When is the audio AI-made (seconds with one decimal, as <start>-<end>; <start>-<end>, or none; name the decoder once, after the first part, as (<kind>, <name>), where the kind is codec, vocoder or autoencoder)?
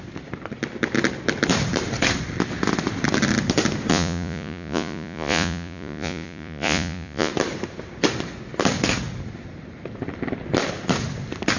3.9-7.3 (vocoder, Vocos)